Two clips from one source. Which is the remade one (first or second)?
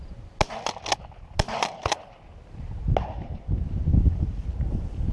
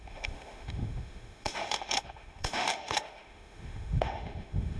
second